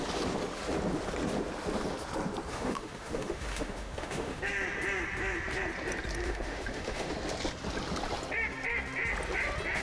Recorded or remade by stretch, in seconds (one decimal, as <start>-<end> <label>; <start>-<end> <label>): 0.0-2.5 recorded; 2.5-4.4 remade; 4.4-6.2 recorded; 6.2-7.1 remade; 7.1-9.8 recorded